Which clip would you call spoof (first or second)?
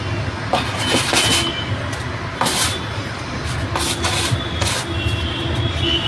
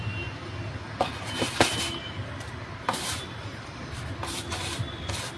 second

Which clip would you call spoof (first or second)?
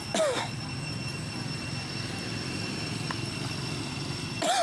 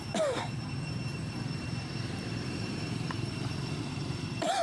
second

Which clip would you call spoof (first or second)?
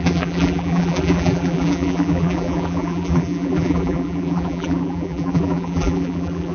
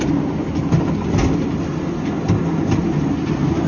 first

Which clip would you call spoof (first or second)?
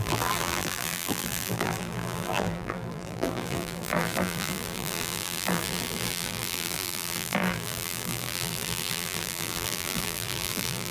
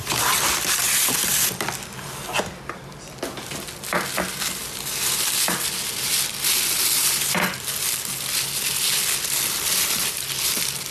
first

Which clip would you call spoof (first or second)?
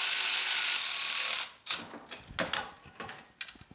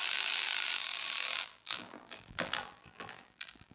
second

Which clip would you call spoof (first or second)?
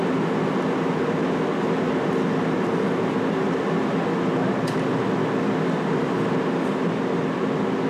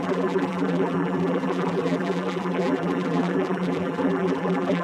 second